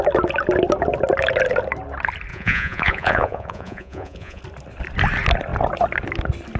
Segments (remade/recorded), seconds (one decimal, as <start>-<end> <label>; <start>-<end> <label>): 0.0-2.3 recorded; 2.3-4.4 remade; 4.4-6.6 recorded